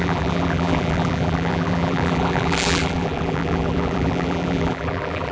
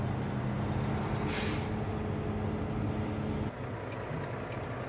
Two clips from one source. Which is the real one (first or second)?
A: second